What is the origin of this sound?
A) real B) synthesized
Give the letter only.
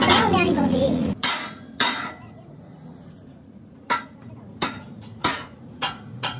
B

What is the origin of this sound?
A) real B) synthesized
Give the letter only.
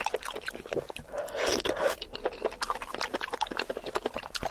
A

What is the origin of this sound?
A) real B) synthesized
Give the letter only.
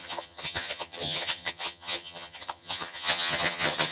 B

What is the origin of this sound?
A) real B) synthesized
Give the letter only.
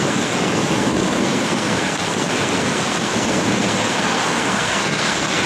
B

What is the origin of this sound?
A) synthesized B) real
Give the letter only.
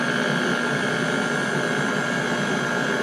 B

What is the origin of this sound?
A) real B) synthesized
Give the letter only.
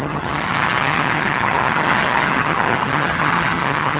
B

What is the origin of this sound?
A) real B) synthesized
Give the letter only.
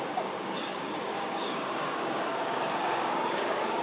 B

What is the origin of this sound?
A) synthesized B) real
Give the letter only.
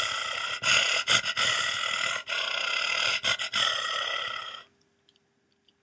B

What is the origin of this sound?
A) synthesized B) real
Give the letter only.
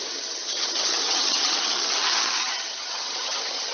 A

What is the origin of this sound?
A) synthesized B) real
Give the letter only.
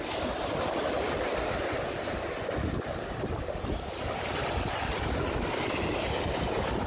B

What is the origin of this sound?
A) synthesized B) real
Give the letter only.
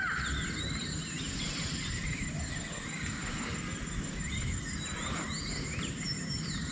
B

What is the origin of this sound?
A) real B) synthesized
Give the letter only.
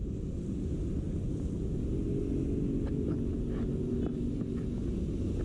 A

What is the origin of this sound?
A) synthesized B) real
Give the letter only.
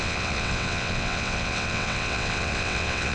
A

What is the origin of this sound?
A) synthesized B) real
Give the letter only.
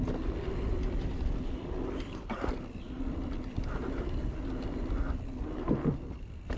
B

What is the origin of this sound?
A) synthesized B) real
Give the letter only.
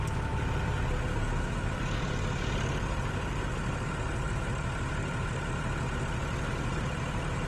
B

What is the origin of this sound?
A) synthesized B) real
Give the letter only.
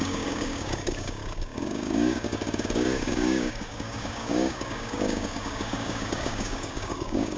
A